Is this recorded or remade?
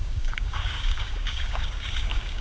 remade